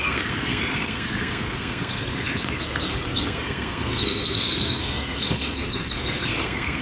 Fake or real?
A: fake